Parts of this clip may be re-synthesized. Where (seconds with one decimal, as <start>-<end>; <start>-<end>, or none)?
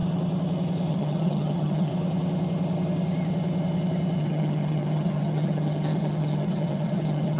0.9-1.9; 4.2-7.4